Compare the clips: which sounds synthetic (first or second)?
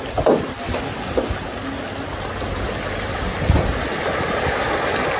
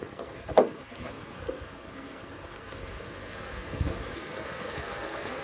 second